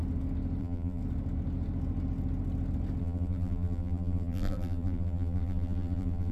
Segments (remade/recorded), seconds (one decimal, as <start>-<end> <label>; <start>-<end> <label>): 0.0-0.6 recorded; 0.6-1.0 remade; 1.0-3.0 recorded; 3.0-6.3 remade